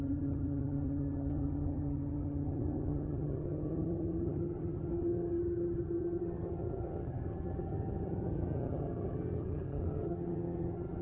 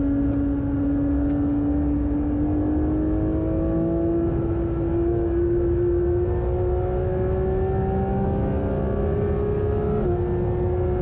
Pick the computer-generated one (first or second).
first